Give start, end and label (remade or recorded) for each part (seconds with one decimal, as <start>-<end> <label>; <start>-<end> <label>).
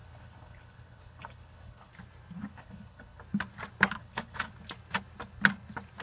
0.0-1.9 remade; 1.9-2.5 recorded; 2.5-3.2 remade; 3.2-4.0 recorded; 4.0-4.5 remade; 4.5-6.0 recorded